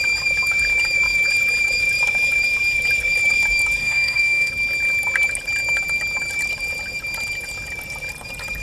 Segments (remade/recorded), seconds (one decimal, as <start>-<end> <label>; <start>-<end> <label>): 0.0-3.8 recorded; 3.8-4.5 remade; 4.5-8.6 recorded